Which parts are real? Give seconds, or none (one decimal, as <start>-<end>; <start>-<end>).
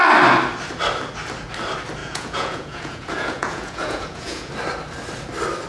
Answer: 0.0-2.0; 4.5-5.7